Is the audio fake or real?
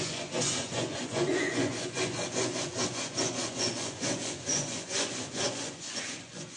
fake